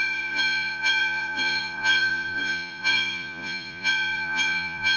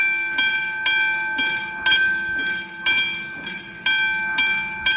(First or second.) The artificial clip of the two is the first